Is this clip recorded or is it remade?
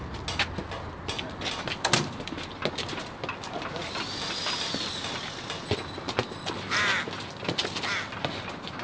recorded